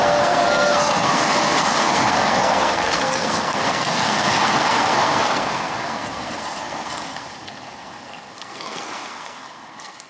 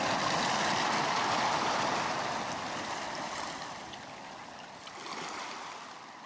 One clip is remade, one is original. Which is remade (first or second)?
first